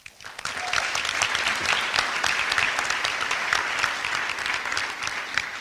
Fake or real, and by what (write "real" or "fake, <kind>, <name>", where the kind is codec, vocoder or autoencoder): fake, vocoder, BigVGAN v2